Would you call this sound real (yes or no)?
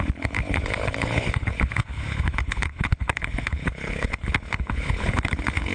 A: no